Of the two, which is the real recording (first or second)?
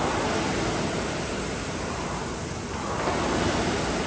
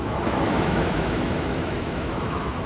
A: first